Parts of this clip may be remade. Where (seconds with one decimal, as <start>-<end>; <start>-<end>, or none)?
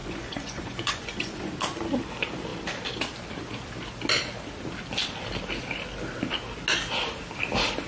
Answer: 0.0-1.5